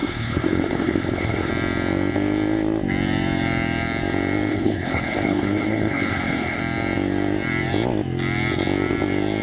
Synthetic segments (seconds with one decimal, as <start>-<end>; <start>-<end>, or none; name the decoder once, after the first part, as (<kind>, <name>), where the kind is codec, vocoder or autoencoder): 0.0-1.5 (codec, HILCodec); 4.5-6.6